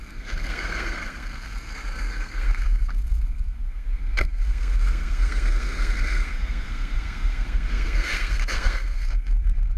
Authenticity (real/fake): fake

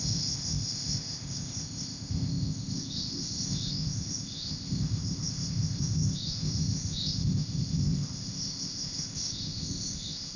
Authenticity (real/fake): fake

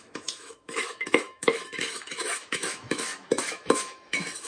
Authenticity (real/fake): fake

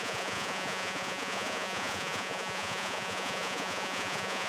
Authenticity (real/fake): fake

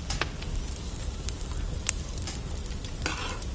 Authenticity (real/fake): real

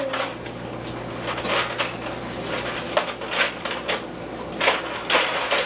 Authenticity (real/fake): real